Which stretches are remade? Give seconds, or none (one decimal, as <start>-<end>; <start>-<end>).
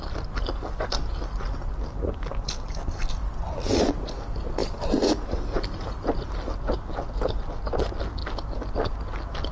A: 4.6-5.3